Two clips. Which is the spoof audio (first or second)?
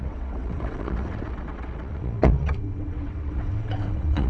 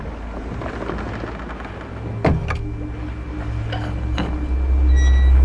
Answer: first